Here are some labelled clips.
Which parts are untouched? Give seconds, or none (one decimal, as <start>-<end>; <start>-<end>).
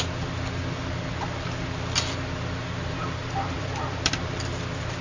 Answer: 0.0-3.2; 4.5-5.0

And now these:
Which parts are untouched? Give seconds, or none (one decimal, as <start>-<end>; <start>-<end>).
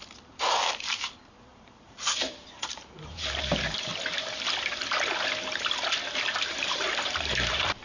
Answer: 3.9-6.1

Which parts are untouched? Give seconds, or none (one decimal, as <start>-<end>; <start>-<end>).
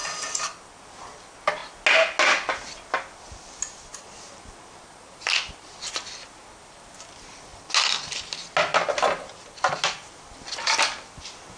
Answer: 0.0-11.6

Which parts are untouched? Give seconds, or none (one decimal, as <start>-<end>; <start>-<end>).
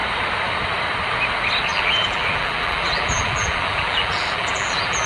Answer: 0.0-1.7